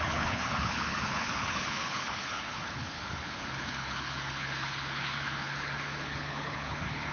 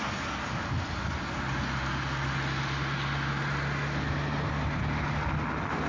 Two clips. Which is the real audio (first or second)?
second